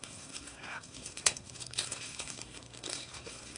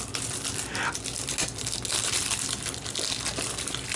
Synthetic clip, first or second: first